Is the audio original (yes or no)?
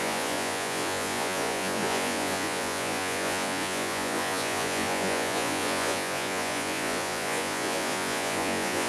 no